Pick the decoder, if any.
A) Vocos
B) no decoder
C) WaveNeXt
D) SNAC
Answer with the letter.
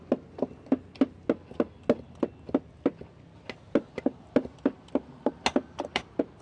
B